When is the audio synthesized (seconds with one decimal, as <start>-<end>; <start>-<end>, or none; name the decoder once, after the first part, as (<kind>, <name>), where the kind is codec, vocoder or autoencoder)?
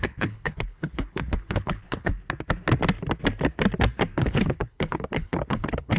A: 0.0-2.1 (codec, HILCodec); 4.2-6.0